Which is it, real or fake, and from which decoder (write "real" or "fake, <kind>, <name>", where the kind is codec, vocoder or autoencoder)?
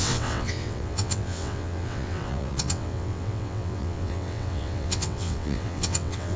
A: fake, vocoder, WaveNeXt